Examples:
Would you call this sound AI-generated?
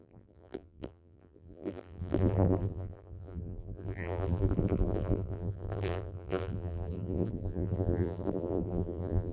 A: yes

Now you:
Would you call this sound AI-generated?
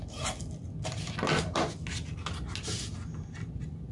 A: no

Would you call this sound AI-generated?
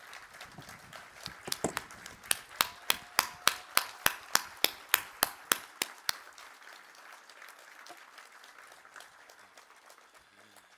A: no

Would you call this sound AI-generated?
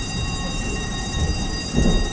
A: yes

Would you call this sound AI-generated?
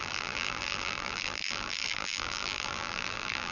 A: yes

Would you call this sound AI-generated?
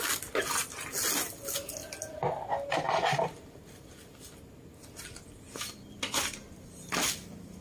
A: no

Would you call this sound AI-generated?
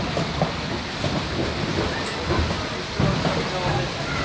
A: yes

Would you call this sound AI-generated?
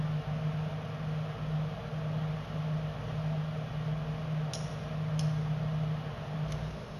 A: no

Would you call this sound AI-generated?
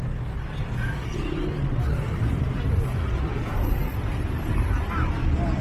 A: no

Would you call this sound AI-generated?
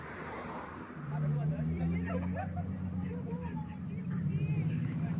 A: yes